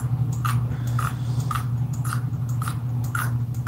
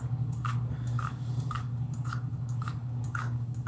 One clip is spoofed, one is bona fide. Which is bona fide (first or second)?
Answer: first